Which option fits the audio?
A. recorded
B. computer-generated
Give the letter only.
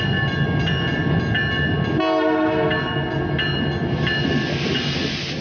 A